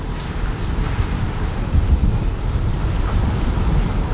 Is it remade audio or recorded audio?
remade